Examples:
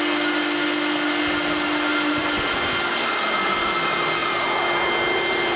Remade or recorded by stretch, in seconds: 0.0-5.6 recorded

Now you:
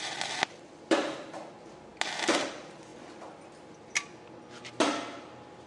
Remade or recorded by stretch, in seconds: 0.0-5.7 recorded

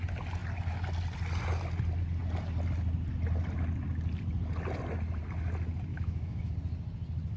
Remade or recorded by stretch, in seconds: 0.0-5.9 recorded; 5.9-6.5 remade; 6.5-7.4 recorded

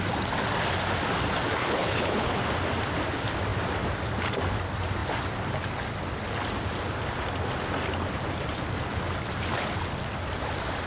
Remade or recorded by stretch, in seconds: 0.0-1.6 recorded; 1.6-2.3 remade; 2.3-10.9 recorded

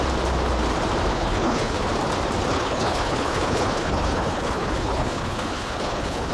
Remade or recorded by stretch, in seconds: 0.0-1.1 recorded; 1.1-1.8 remade; 1.8-2.5 recorded; 2.5-6.3 remade

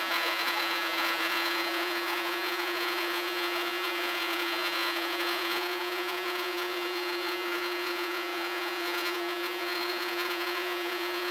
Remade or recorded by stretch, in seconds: 0.0-11.3 remade

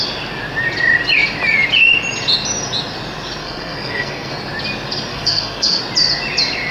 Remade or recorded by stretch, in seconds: 0.0-3.4 recorded; 3.4-4.3 remade; 4.3-5.1 recorded; 5.1-5.8 remade; 5.8-6.7 recorded